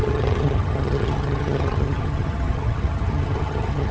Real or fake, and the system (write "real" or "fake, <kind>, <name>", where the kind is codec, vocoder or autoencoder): fake, vocoder, HiFi-GAN